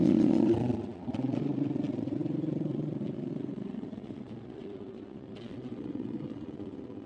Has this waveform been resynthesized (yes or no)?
yes